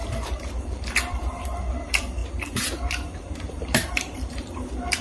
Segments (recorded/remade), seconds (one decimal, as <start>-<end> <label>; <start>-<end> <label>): 0.0-2.2 remade; 2.2-2.9 recorded; 2.9-5.0 remade